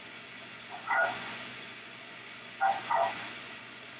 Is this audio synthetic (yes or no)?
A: yes